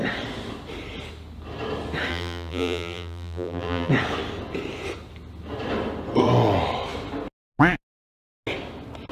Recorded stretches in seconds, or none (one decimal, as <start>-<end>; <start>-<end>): 0.0-2.1; 3.9-9.1

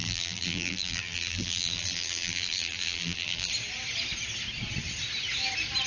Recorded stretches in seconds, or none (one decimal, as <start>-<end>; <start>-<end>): 3.5-5.9